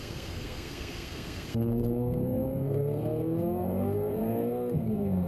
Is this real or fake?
fake